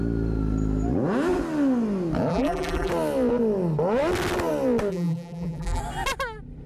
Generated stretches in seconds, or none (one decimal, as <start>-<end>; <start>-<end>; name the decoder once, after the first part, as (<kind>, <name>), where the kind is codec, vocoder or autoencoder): 2.3-2.9 (vocoder, BigVGAN v2); 4.9-5.8